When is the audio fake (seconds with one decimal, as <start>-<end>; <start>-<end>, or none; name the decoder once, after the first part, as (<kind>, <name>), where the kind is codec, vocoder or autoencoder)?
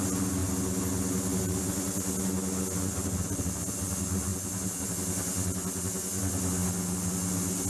none